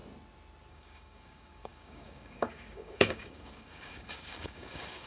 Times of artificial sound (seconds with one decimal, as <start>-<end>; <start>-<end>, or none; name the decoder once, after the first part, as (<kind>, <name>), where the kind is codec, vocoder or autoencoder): 0.7-5.1 (codec, DAC)